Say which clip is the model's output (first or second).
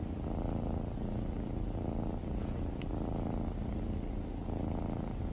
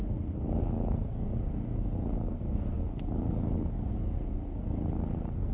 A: second